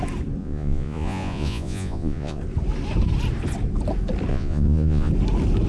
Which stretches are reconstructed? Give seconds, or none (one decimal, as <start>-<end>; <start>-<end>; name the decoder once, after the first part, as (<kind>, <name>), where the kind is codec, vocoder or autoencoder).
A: 0.4-2.4 (vocoder, Vocos); 4.3-5.1